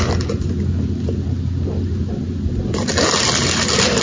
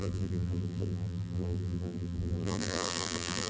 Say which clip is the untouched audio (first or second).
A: first